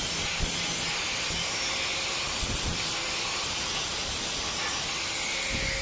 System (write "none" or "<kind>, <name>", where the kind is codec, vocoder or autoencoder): none